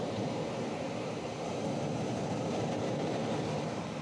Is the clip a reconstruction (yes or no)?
yes